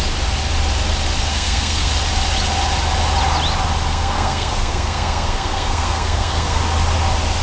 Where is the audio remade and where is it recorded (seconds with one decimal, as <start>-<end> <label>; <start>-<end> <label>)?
0.0-1.3 recorded; 1.3-1.9 remade; 1.9-3.9 recorded; 3.9-6.6 remade; 6.6-7.4 recorded